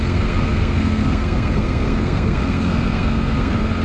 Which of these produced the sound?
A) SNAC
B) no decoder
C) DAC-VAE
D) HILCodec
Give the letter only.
A